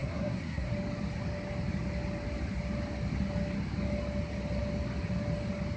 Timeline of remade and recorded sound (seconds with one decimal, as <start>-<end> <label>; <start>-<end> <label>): 0.0-0.7 remade; 0.7-5.8 recorded